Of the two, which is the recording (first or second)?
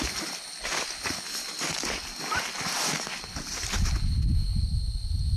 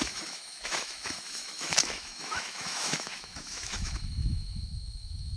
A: first